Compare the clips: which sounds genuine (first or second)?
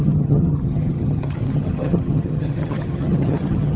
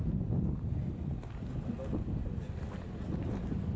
second